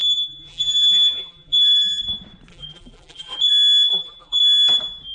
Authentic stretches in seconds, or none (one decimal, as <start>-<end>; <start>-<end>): 1.9-2.5; 3.5-3.9; 4.4-5.1